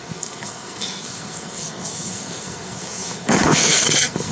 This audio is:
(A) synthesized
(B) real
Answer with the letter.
A